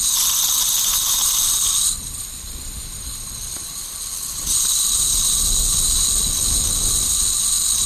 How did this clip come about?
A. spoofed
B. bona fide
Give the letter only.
B